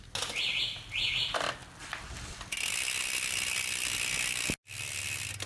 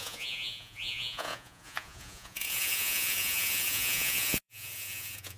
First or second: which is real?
first